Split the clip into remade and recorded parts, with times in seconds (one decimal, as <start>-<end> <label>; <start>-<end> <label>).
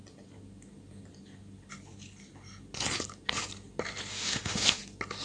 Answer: 0.0-4.1 recorded; 4.1-4.8 remade; 4.8-5.2 recorded